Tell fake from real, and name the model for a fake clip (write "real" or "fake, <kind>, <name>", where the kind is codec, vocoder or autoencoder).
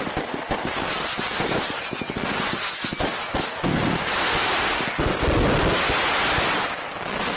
real